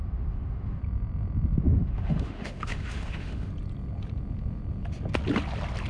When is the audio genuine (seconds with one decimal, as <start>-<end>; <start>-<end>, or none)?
0.8-1.6; 3.5-5.9